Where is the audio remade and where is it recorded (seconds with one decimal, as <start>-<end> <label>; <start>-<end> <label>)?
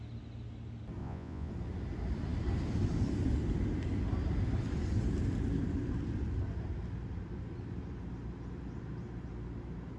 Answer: 0.0-1.0 recorded; 1.0-1.5 remade; 1.5-10.0 recorded